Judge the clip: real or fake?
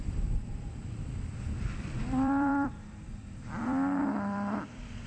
fake